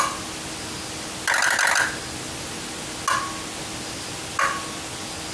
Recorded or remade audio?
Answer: recorded